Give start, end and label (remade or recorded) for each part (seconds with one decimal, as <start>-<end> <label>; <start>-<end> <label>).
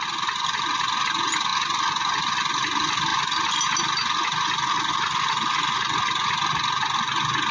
0.0-7.5 recorded